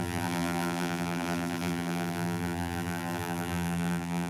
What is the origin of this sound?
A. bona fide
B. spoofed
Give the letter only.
B